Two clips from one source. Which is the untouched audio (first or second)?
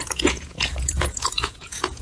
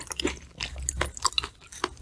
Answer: second